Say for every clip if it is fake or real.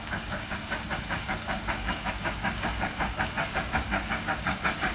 fake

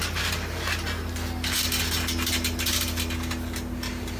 real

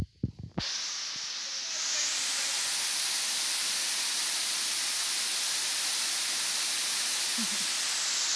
real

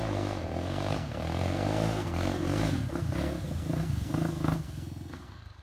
fake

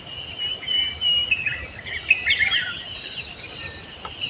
real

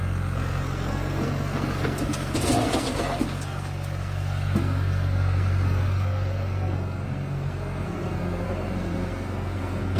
fake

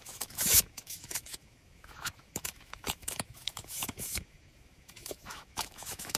fake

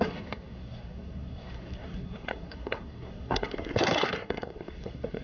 fake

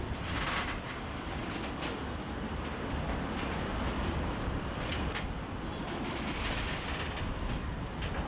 real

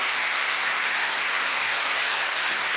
fake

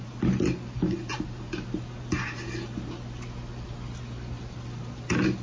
real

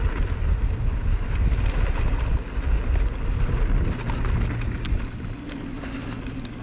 real